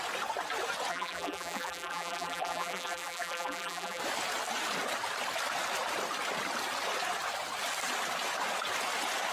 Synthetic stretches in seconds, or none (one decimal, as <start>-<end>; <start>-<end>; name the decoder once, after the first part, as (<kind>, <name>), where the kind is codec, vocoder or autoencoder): 0.9-4.0 (vocoder, BigVGAN v2)